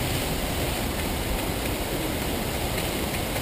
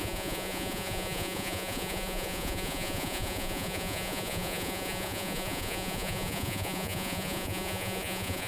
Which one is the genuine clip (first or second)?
first